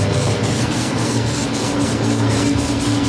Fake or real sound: fake